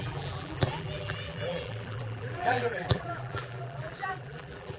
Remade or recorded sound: remade